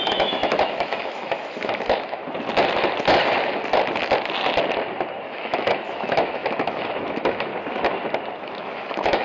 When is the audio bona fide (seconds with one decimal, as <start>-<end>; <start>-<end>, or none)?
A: 2.2-5.2; 7.5-8.3